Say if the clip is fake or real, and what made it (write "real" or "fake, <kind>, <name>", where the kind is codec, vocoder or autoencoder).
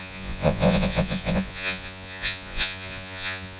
fake, vocoder, Vocos